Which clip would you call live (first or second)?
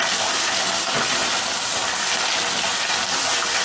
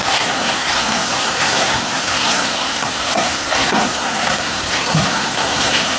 first